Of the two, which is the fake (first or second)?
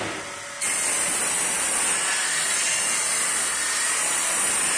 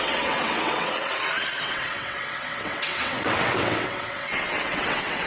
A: second